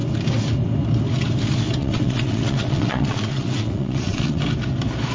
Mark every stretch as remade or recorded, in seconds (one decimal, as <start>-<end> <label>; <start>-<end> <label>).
0.0-1.8 recorded; 1.8-4.4 remade; 4.4-5.1 recorded